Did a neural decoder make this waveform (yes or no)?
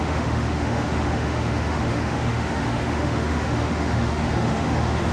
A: yes